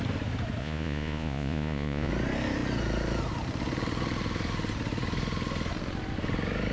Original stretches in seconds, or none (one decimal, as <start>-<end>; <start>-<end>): 0.0-0.6; 2.1-6.7

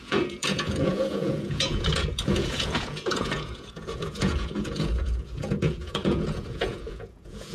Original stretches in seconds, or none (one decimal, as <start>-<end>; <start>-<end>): none